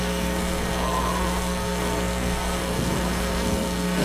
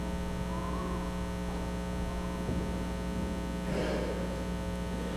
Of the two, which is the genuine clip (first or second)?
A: second